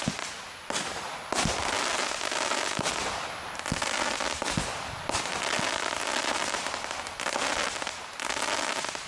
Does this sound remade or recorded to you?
recorded